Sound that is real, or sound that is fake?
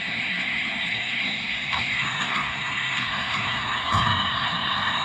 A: fake